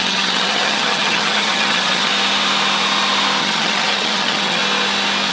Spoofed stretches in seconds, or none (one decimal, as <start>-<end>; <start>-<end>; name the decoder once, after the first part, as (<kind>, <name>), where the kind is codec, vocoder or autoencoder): 0.0-2.1 (vocoder, HiFi-GAN); 3.4-4.6